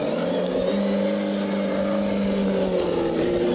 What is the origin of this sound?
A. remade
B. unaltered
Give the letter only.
B